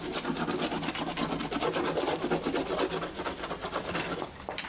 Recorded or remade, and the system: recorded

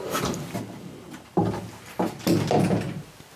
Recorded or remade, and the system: recorded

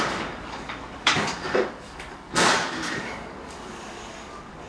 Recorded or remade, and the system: remade, codec, DAC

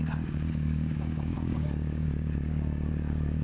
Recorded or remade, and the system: remade, codec, DAC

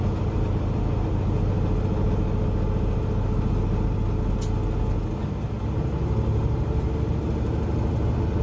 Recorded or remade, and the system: recorded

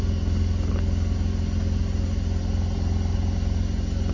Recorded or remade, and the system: recorded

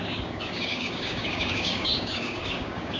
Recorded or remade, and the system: remade, codec, DAC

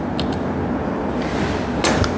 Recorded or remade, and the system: recorded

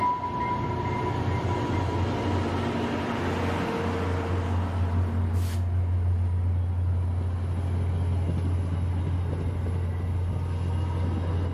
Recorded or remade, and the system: recorded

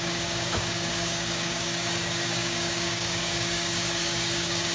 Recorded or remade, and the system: remade, codec, DAC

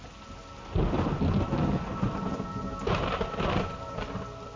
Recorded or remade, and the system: recorded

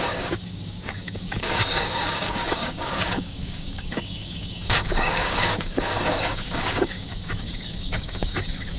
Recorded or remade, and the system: remade, codec, DAC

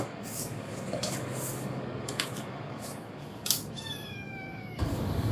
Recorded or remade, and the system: remade, codec, DAC